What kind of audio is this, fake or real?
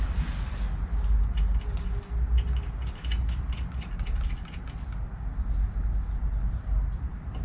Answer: real